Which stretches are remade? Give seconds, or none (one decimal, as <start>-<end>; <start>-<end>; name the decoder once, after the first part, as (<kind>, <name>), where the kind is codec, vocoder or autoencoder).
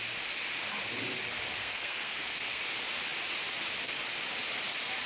1.6-2.6 (codec, SNAC)